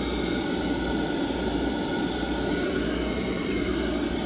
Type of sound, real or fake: real